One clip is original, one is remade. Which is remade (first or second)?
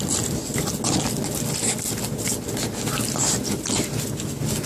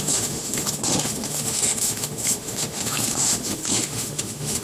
second